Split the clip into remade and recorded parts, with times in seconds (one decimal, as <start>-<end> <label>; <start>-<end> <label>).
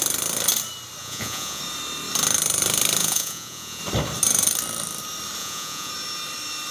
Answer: 0.0-1.0 recorded; 1.0-1.6 remade; 1.6-3.0 recorded; 3.0-3.8 remade; 3.8-5.4 recorded; 5.4-5.9 remade; 5.9-6.7 recorded